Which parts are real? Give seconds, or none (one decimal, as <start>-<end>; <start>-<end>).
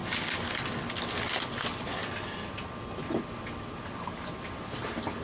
0.0-1.6